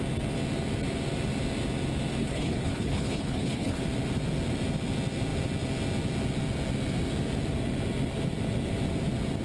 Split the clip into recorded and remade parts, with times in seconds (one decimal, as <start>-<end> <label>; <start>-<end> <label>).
0.0-2.2 recorded; 2.2-3.8 remade; 3.8-9.4 recorded